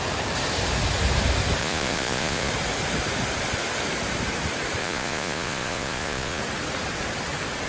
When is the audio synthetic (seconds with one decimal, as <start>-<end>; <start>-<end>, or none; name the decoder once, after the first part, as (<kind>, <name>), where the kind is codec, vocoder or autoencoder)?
1.6-2.5 (vocoder, Vocos); 4.8-6.4